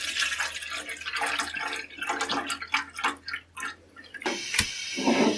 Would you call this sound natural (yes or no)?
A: yes